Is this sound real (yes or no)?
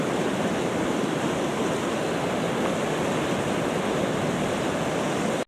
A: yes